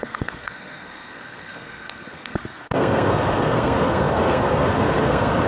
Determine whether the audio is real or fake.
fake